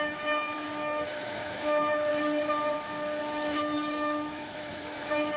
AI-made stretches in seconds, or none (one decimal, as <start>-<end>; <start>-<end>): 0.0-2.1; 3.2-5.4